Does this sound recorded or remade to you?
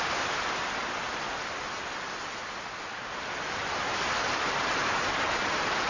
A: recorded